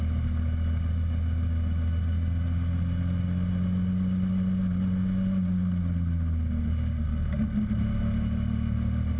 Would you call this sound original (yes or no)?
yes